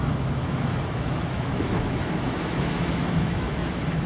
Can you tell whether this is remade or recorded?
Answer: remade